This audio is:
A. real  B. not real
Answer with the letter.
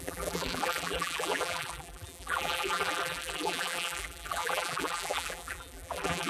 B